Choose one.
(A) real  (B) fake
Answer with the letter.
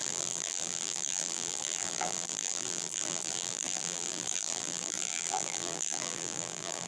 B